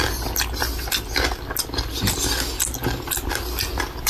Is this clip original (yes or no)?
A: yes